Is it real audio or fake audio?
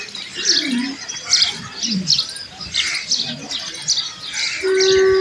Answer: real